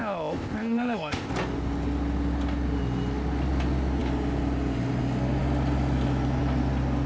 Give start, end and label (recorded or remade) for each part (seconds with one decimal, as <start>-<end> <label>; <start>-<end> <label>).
0.0-1.3 remade; 1.3-7.1 recorded